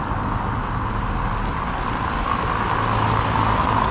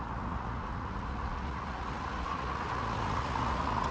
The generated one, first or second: second